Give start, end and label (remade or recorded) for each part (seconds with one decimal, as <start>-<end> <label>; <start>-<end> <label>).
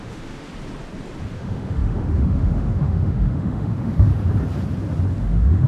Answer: 0.0-0.5 remade; 0.5-1.3 recorded; 1.3-4.1 remade; 4.1-5.2 recorded; 5.2-5.7 remade